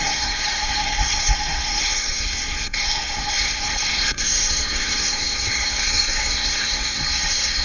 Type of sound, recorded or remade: remade